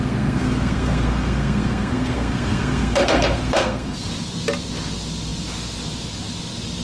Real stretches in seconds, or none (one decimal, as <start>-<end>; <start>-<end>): 4.1-6.8